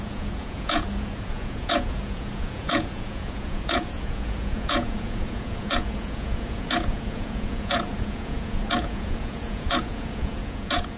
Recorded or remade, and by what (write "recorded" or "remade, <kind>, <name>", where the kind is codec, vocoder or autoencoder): remade, vocoder, Vocos